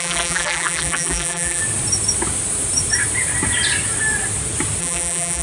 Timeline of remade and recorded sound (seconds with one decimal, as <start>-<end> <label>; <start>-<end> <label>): 0.0-1.6 remade; 1.6-4.8 recorded; 4.8-5.4 remade